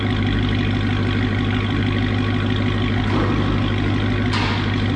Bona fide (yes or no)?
yes